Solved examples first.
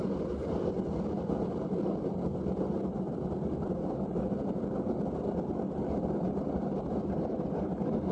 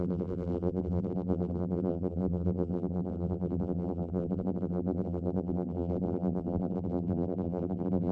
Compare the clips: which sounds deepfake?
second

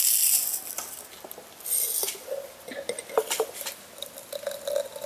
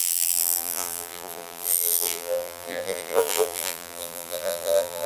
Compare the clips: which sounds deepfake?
second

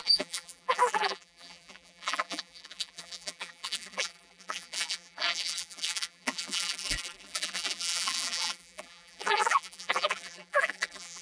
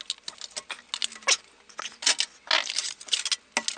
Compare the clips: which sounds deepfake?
first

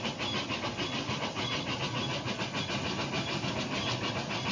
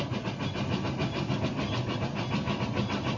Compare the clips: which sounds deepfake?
first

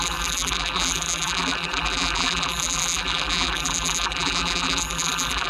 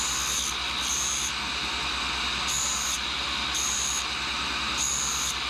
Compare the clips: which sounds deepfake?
first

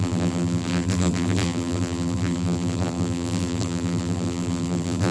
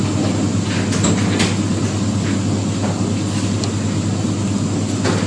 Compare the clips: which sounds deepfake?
first